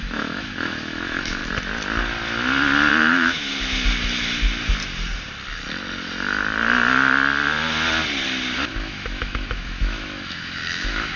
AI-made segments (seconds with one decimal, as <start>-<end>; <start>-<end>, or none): 0.0-1.4; 2.9-3.5; 8.7-11.2